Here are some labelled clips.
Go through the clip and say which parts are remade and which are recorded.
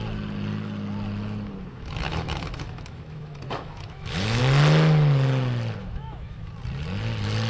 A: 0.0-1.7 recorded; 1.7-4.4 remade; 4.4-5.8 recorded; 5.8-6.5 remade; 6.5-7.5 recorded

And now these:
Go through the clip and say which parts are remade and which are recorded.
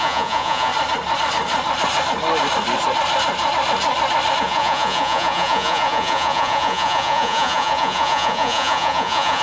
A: 0.0-0.7 remade; 0.7-4.4 recorded; 4.4-9.4 remade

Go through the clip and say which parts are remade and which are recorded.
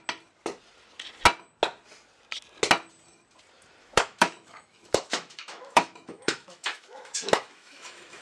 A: 0.0-3.8 recorded; 3.8-8.2 remade